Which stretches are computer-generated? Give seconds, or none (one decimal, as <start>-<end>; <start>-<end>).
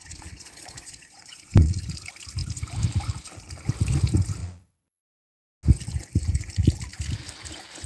0.0-1.8; 4.4-5.0